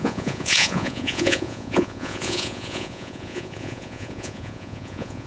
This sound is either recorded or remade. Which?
remade